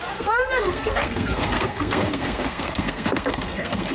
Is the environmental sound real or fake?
fake